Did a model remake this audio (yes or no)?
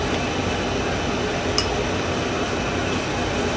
no